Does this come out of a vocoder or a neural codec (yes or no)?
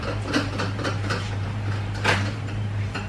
yes